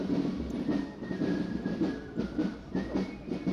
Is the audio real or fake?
real